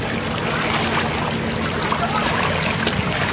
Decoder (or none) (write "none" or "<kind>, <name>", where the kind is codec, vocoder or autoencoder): none